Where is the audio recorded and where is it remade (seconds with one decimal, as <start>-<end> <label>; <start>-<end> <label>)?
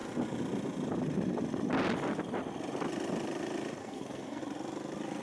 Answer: 0.0-3.8 recorded; 3.8-4.4 remade; 4.4-5.2 recorded